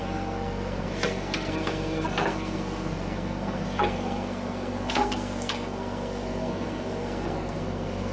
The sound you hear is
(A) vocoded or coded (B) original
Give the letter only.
A